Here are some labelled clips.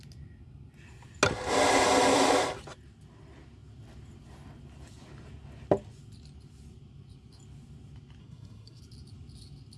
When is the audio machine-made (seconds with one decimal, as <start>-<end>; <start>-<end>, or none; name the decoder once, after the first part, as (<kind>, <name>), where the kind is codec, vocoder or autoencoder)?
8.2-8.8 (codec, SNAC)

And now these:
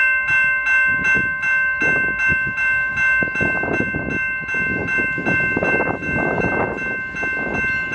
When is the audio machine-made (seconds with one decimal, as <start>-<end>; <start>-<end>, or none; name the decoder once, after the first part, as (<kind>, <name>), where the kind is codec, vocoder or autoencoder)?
none

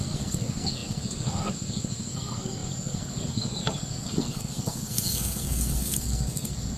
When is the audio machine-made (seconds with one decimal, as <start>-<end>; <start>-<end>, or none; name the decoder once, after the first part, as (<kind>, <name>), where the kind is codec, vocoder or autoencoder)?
0.0-6.8 (codec, SNAC)

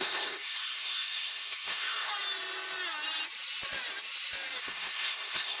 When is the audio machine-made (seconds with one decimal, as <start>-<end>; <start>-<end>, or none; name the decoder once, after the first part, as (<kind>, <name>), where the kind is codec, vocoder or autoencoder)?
0.0-2.1 (codec, SNAC); 4.6-5.6

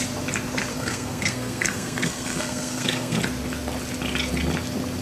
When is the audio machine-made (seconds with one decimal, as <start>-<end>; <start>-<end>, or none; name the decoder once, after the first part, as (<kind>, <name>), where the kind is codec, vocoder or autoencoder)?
0.7-3.2 (codec, SNAC)

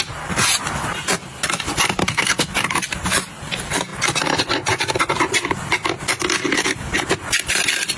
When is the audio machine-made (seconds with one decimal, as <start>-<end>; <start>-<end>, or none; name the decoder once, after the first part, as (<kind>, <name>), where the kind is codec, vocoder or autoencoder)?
2.0-2.5 (codec, SNAC)